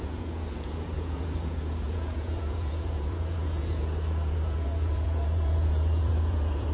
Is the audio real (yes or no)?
no